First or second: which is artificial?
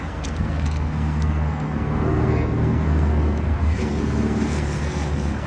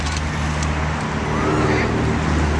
first